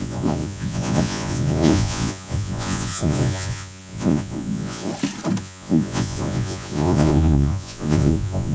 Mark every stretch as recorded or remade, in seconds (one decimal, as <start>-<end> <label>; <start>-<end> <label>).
0.0-4.9 remade; 4.9-5.4 recorded; 5.4-8.5 remade